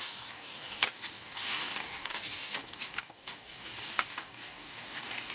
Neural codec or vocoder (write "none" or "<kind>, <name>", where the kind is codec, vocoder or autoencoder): codec, DAC